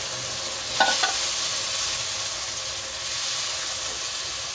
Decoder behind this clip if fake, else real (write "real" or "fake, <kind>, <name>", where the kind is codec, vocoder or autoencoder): real